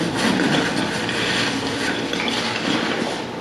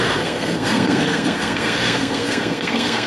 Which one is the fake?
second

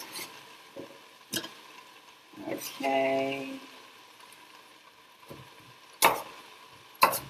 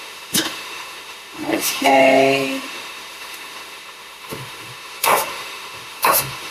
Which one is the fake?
second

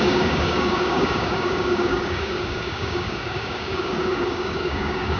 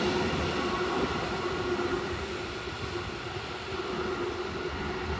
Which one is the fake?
first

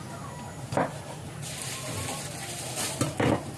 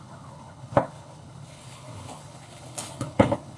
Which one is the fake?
second